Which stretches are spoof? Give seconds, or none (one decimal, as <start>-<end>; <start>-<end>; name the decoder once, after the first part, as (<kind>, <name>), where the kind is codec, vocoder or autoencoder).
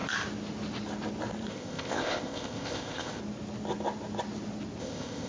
1.5-3.2 (codec, ZipCodec); 4.8-5.3